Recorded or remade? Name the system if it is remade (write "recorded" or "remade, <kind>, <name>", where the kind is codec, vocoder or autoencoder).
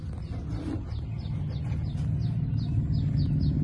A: recorded